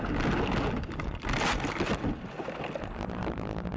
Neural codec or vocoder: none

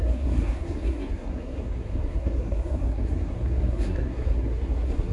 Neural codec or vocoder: codec, SNAC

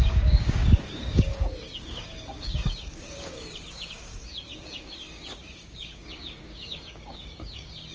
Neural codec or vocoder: codec, DAC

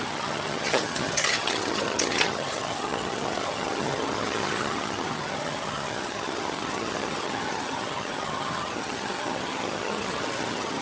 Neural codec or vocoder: vocoder, HiFi-GAN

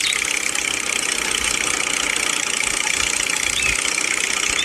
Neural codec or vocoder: none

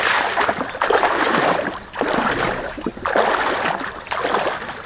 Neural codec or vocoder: none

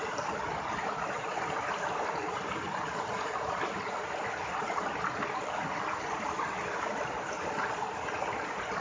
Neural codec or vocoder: none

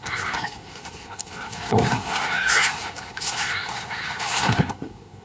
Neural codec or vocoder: codec, SNAC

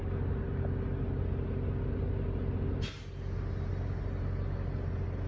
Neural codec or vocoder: none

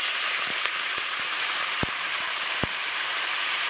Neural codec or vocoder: vocoder, BigVGAN v2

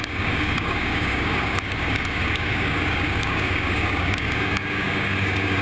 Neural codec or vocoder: codec, DAC